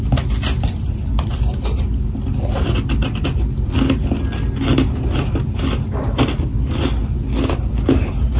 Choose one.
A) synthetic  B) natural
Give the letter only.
B